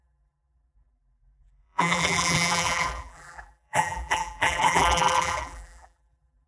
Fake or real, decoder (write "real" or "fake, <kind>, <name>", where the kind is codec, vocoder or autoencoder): fake, vocoder, BigVGAN v2